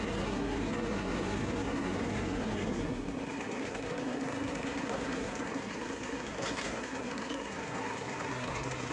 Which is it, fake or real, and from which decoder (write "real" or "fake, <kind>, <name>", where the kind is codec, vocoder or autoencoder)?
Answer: fake, codec, SNAC